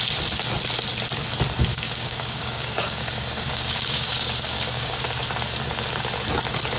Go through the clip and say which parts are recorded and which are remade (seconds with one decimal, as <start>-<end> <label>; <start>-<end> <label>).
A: 0.0-1.7 recorded; 1.7-5.1 remade; 5.1-6.8 recorded